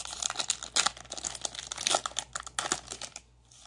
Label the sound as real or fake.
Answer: real